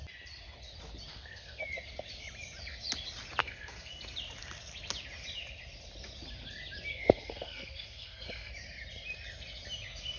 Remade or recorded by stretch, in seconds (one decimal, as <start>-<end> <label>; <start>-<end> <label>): 0.0-1.1 recorded; 1.1-1.6 remade; 1.6-3.4 recorded; 3.4-3.9 remade; 3.9-6.9 recorded; 6.9-8.5 remade; 8.5-10.2 recorded